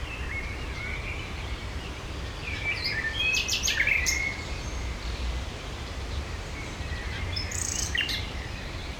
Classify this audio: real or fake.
fake